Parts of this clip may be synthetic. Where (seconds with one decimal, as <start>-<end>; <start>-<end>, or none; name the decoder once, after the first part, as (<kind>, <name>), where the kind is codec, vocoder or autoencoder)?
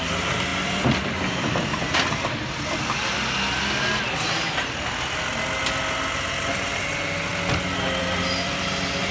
none